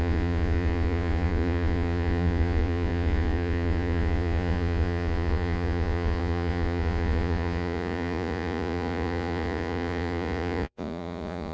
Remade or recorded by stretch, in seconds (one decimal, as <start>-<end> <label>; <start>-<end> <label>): 0.0-11.5 remade